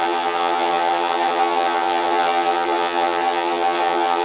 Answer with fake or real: fake